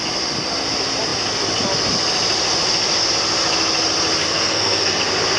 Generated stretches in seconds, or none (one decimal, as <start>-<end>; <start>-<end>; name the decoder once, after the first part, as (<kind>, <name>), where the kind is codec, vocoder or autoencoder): 4.2-5.0 (codec, SNAC)